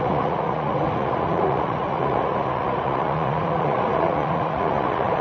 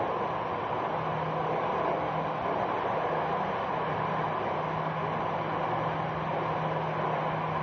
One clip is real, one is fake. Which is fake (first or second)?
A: first